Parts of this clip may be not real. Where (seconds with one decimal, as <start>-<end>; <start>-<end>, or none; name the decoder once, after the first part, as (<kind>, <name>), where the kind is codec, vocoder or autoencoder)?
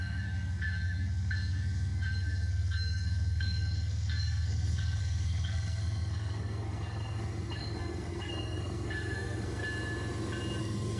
0.0-9.6 (codec, SNAC); 10.6-11.0